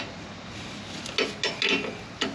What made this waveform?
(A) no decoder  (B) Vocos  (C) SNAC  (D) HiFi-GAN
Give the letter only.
A